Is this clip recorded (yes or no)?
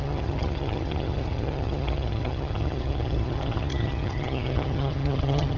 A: no